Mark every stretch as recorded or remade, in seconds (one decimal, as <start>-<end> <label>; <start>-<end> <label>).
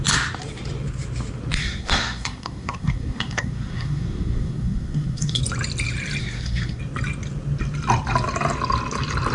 0.0-1.6 recorded; 1.6-5.4 remade; 5.4-6.2 recorded; 6.2-6.8 remade; 6.8-9.3 recorded